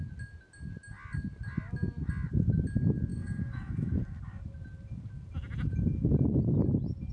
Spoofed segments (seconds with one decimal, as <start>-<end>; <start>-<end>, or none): 3.1-3.9